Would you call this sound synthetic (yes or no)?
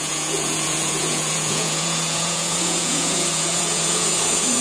yes